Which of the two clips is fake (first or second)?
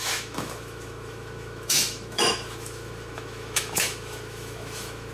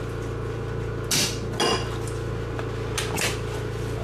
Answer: first